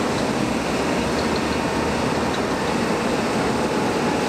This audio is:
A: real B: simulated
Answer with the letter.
A